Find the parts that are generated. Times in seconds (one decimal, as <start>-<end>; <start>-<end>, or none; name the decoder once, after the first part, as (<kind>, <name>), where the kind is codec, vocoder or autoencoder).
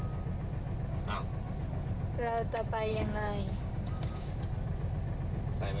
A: 2.9-4.3 (codec, DAC)